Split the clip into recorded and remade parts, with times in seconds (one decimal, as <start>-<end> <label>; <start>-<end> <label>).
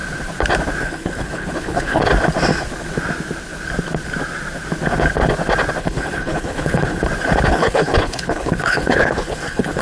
0.0-0.8 recorded; 0.8-2.0 remade; 2.0-5.8 recorded; 5.8-7.0 remade; 7.0-7.5 recorded; 7.5-9.8 remade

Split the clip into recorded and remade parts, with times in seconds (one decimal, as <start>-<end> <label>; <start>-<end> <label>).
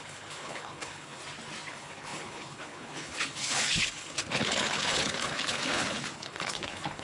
0.0-1.2 remade; 1.2-1.7 recorded; 1.7-7.0 remade